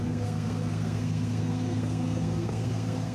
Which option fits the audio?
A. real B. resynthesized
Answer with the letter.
B